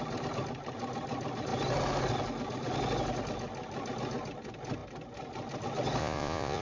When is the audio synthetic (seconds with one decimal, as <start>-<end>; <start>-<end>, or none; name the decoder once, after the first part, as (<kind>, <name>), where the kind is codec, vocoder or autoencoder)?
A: 6.0-6.6 (vocoder, Vocos)